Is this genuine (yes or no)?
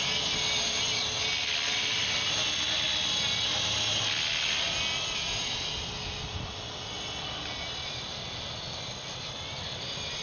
yes